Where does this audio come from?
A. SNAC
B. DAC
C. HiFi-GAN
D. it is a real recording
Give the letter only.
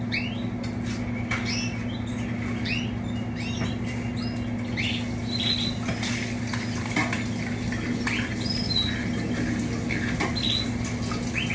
D